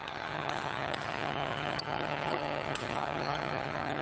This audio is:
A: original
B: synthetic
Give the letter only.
B